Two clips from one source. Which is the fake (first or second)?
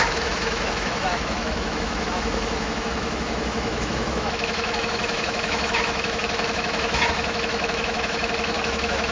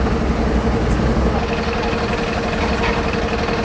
first